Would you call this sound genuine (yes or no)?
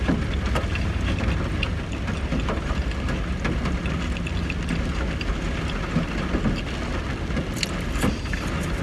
yes